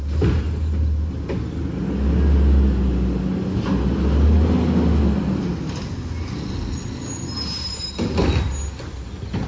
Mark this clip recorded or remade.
recorded